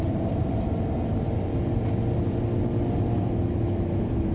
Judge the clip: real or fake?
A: real